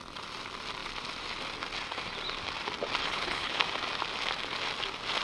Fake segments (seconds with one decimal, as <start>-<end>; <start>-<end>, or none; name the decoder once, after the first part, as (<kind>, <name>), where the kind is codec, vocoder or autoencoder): 3.0-3.6 (codec, HILCodec)